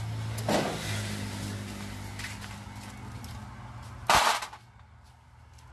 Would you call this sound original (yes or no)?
yes